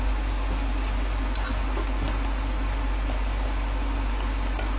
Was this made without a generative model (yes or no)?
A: yes